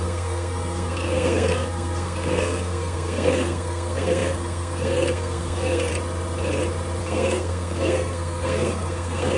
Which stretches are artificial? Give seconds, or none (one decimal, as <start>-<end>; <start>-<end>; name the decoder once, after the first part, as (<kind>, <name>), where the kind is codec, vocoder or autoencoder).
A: 0.0-5.9 (codec, SNAC); 7.0-9.4